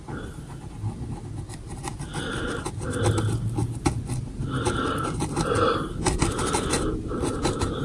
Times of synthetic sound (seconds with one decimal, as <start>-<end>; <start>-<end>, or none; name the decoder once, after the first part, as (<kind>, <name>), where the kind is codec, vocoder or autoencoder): none